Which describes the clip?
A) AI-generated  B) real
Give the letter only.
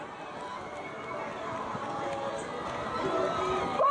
B